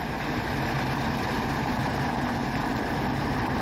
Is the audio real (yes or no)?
no